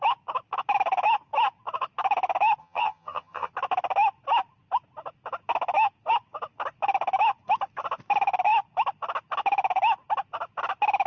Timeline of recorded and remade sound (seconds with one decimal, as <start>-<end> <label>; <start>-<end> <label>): 0.0-2.6 recorded; 2.6-3.5 remade; 3.5-11.1 recorded